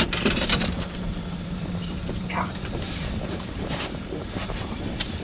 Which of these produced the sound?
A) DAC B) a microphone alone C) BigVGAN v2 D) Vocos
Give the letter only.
C